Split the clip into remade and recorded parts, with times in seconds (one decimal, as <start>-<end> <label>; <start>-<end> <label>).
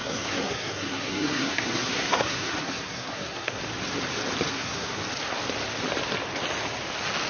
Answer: 0.0-3.6 remade; 3.6-4.5 recorded; 4.5-5.0 remade; 5.0-7.3 recorded